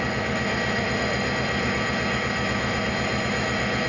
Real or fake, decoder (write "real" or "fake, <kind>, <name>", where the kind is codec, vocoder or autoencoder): real